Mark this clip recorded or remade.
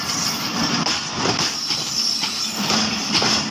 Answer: remade